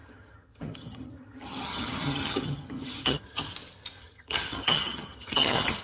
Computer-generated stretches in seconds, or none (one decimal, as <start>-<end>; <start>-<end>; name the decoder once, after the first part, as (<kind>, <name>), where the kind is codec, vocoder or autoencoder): 0.0-3.5 (vocoder, HiFi-GAN); 4.0-5.8